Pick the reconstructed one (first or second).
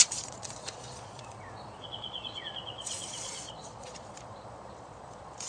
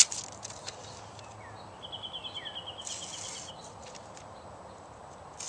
first